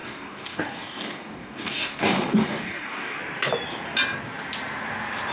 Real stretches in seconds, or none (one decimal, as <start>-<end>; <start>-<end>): 3.2-5.3